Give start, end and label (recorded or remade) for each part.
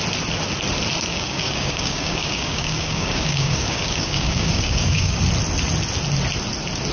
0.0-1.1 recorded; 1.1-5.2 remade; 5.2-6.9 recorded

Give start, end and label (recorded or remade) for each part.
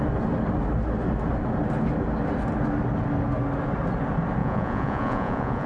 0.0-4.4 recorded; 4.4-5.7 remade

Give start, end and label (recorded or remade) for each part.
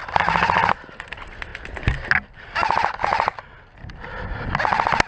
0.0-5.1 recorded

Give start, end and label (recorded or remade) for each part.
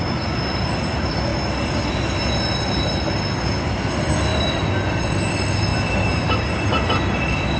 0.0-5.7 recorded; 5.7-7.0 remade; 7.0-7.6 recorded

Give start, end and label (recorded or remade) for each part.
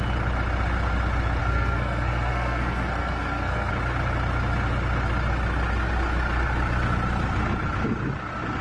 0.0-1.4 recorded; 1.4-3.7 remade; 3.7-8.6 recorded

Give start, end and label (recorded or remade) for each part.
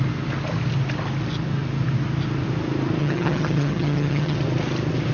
0.0-3.0 recorded; 3.0-4.4 remade; 4.4-5.1 recorded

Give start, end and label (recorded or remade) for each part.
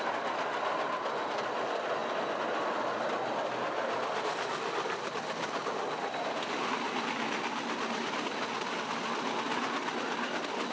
0.0-10.7 recorded